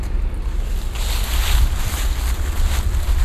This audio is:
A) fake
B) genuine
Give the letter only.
B